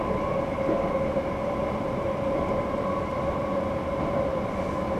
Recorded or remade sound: recorded